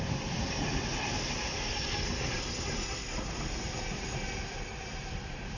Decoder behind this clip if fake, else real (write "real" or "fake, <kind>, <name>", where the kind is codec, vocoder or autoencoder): real